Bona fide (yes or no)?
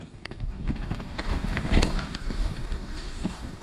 no